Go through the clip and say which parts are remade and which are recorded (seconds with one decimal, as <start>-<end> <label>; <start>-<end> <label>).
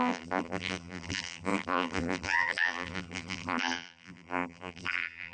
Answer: 0.0-5.3 remade